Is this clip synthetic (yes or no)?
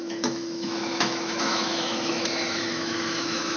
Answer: yes